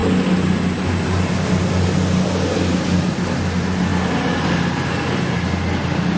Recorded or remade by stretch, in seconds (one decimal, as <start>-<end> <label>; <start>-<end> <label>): 0.0-6.2 recorded